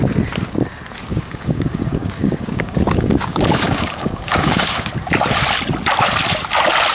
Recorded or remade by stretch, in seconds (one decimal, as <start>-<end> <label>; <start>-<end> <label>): 0.0-1.1 recorded; 1.1-4.9 remade; 4.9-6.9 recorded